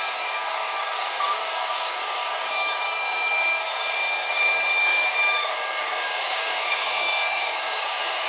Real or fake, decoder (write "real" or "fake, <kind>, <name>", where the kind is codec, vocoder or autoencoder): fake, codec, DAC